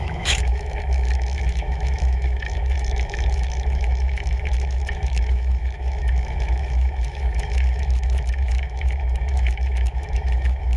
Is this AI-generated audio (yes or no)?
yes